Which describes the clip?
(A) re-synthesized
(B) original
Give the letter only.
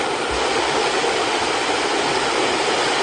B